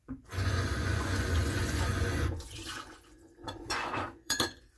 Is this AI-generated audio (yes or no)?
yes